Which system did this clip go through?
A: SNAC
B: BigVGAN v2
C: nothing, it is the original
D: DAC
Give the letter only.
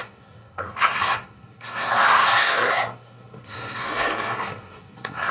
A